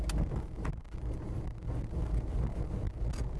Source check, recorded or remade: recorded